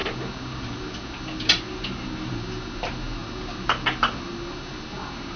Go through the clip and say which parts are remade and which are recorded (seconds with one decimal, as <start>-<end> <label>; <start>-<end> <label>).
0.0-5.4 recorded